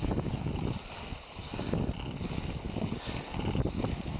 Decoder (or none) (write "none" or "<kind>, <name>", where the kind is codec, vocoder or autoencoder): none